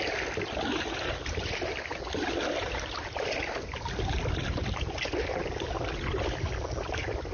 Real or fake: real